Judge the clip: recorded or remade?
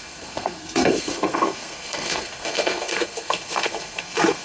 remade